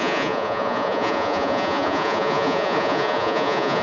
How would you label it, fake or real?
fake